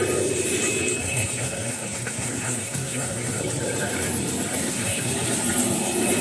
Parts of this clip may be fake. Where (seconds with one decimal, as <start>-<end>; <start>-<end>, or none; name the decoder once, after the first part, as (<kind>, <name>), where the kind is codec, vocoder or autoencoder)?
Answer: 1.0-3.4 (codec, SNAC); 4.6-5.1